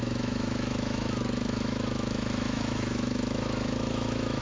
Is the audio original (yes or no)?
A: no